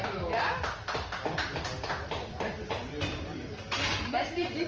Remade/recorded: recorded